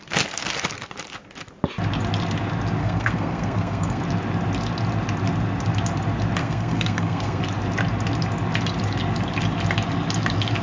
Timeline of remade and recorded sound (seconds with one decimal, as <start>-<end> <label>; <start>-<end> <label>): 0.0-2.8 recorded; 2.8-4.0 remade; 4.0-6.4 recorded; 6.4-7.4 remade; 7.4-10.6 recorded